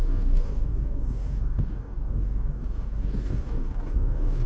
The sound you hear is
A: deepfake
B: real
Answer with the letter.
A